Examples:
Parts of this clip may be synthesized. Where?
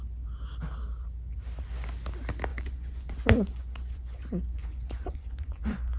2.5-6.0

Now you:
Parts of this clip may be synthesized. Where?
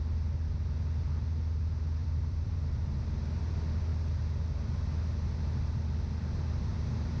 2.0-3.0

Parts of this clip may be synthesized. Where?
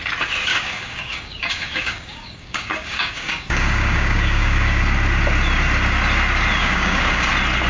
0.5-4.8; 6.6-7.3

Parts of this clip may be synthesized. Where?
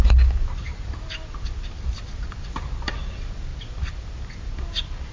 none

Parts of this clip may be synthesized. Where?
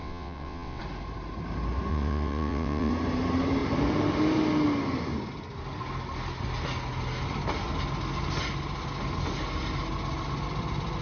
0.0-0.8; 1.9-2.9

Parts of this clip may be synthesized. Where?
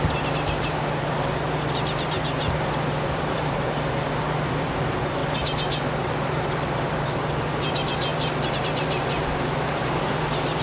0.0-5.2; 5.8-10.6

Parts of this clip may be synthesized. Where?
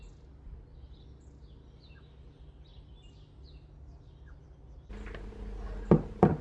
2.7-5.3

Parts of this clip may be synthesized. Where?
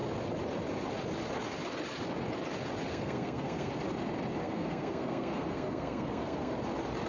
2.9-3.7; 4.4-6.5